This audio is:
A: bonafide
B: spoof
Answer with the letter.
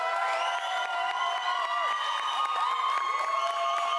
A